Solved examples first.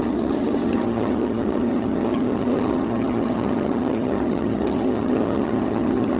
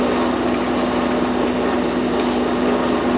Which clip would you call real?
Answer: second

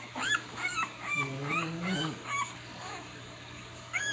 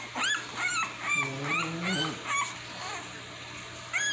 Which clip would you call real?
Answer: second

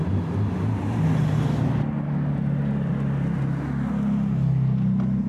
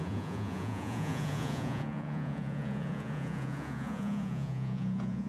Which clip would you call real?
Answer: first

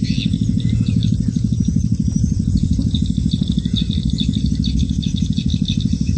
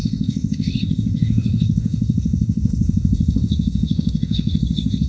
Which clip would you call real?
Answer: first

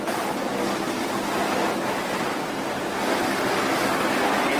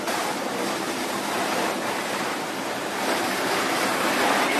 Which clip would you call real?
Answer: first